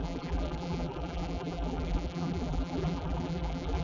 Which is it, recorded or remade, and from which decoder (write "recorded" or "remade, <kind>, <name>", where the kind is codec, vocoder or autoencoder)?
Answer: remade, vocoder, BigVGAN v2